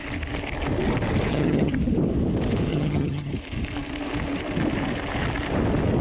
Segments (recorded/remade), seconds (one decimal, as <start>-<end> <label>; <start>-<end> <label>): 0.0-1.3 recorded; 1.3-1.8 remade; 1.8-2.7 recorded; 2.7-3.3 remade; 3.3-6.0 recorded